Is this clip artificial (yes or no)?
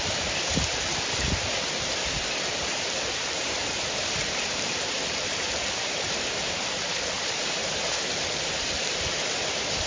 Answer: yes